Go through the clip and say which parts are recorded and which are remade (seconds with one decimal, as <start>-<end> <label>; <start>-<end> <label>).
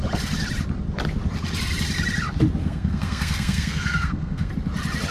0.0-2.6 recorded; 2.6-4.5 remade; 4.5-5.1 recorded